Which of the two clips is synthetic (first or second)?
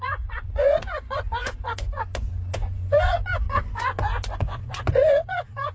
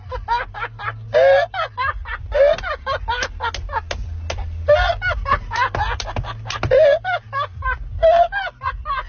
first